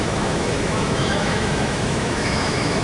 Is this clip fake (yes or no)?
yes